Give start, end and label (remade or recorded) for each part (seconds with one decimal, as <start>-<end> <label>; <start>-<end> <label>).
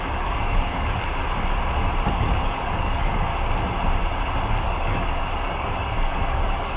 0.0-1.2 remade; 1.2-2.1 recorded; 2.1-3.3 remade; 3.3-4.5 recorded; 4.5-6.8 remade